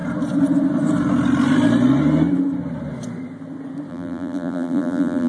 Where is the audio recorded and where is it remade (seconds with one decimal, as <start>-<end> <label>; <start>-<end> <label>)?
0.0-3.9 recorded; 3.9-5.3 remade